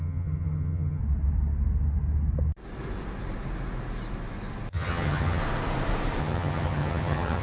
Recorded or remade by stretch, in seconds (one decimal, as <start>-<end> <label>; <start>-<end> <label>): 0.0-1.0 remade; 1.0-4.7 recorded; 4.7-5.4 remade; 5.4-6.2 recorded; 6.2-7.4 remade